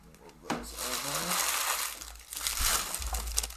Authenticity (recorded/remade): recorded